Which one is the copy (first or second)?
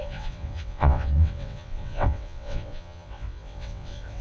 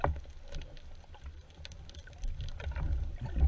first